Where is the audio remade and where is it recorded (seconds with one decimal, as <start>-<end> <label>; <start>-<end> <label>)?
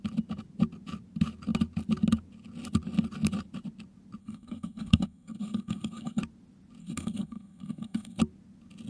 0.0-4.2 recorded; 4.2-6.2 remade; 6.2-6.8 recorded; 6.8-8.2 remade; 8.2-8.9 recorded